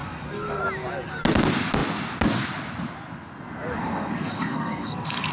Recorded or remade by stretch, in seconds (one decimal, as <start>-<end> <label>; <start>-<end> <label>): 0.0-0.6 remade; 0.6-3.8 recorded; 3.8-5.3 remade